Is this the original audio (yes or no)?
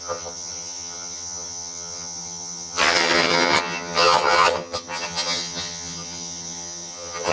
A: no